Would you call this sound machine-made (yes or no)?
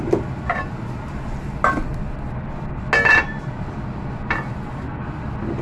no